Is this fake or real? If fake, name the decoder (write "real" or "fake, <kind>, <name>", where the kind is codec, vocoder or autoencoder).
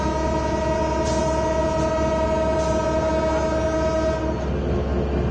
real